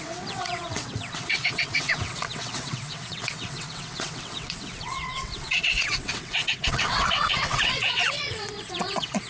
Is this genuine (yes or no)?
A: no